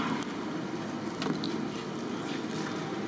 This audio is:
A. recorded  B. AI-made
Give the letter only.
A